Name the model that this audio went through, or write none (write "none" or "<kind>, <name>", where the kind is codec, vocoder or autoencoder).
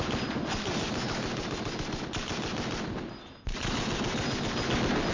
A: none